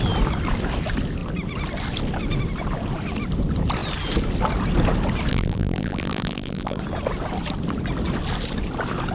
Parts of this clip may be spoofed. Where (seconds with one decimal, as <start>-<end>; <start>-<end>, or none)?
5.3-6.8